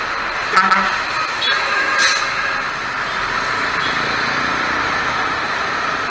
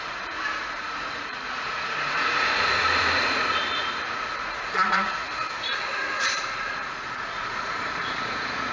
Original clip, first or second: first